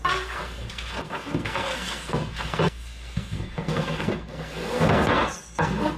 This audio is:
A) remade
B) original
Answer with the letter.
A